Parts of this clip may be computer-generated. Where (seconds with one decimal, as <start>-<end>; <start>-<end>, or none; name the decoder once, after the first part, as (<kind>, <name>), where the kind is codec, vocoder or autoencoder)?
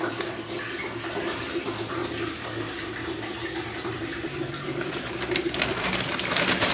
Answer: 0.0-6.7 (vocoder, BigVGAN v2)